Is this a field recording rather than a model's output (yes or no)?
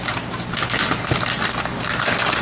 yes